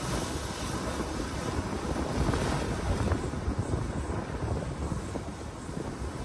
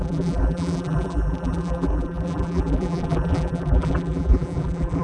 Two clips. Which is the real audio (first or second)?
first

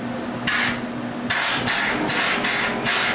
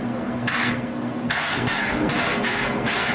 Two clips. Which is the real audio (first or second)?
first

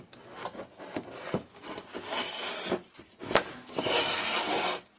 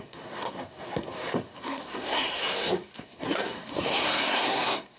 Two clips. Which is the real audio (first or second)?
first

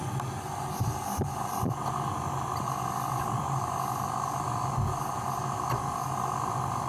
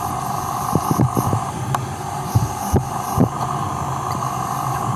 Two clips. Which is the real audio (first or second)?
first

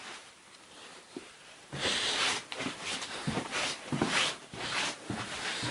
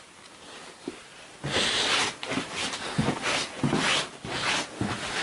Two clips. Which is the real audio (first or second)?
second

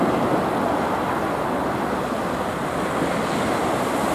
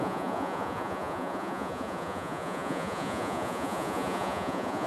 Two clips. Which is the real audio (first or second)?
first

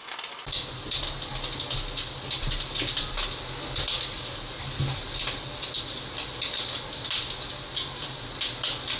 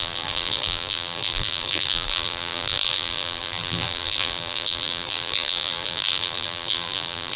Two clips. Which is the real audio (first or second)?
first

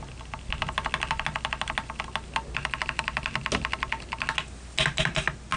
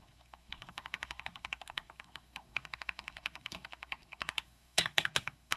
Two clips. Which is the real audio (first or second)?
first